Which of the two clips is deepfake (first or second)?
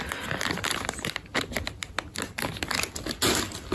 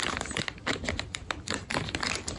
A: second